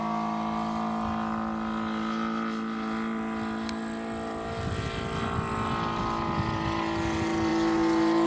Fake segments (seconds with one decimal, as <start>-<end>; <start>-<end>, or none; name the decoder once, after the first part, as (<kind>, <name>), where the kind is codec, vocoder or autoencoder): none